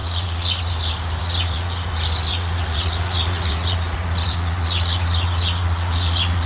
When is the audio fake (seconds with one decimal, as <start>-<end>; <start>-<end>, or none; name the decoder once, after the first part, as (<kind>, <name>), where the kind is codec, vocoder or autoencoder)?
0.0-0.7 (vocoder, Vocos); 1.2-1.9; 2.3-6.5

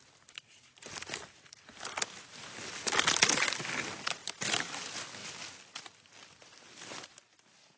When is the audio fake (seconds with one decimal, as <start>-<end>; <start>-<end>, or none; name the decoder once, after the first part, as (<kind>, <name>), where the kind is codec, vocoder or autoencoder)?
none

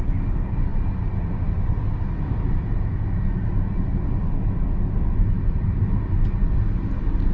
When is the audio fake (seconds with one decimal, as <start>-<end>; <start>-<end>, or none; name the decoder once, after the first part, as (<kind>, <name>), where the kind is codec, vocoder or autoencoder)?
none

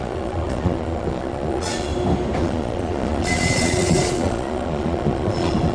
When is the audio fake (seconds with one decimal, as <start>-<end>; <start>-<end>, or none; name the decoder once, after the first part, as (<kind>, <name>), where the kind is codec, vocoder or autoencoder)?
0.0-1.9 (vocoder, Vocos); 2.4-5.7

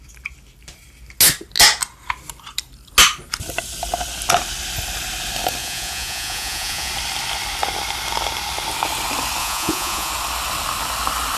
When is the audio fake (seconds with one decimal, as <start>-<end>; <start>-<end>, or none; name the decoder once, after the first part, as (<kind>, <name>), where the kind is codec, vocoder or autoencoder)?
5.6-6.9 (vocoder, Vocos); 9.4-10.1